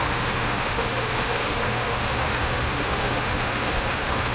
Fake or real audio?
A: fake